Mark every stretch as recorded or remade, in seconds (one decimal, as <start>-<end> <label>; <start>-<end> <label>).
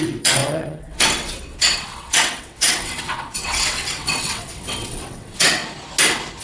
0.0-5.6 remade; 5.6-6.4 recorded